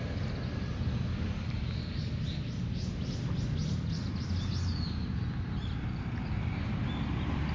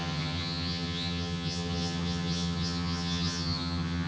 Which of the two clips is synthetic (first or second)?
second